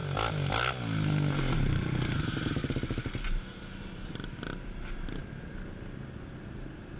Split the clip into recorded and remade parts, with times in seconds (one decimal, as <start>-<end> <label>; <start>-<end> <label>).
0.0-7.0 recorded